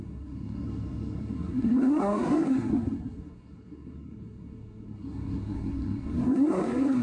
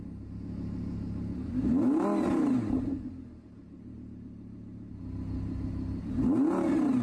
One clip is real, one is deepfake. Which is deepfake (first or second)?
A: first